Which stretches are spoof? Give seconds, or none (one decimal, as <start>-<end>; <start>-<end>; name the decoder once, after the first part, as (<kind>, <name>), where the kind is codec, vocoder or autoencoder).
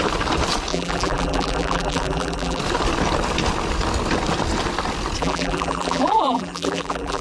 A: 0.7-2.6 (vocoder, BigVGAN v2); 5.2-7.2